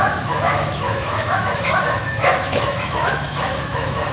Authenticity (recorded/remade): remade